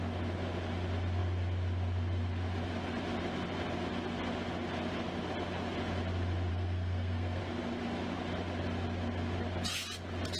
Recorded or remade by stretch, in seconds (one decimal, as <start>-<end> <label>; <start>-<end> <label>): 0.0-6.5 recorded; 6.5-7.4 remade; 7.4-10.4 recorded